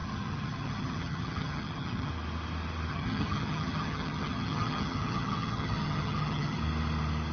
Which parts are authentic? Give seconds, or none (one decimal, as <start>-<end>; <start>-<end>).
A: 2.1-2.9; 6.6-7.3